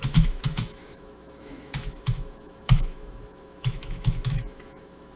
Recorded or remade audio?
remade